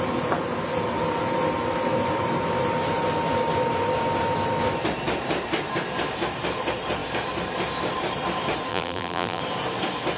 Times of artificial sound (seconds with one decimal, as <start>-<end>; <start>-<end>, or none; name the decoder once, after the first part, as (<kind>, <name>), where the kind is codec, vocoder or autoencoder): 8.7-9.4 (vocoder, BigVGAN v2)